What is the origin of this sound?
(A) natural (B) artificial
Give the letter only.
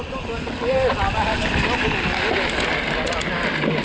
A